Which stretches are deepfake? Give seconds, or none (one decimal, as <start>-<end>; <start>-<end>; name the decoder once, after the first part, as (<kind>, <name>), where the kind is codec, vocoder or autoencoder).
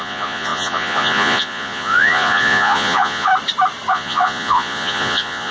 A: 0.0-3.3 (vocoder, Vocos); 3.9-5.5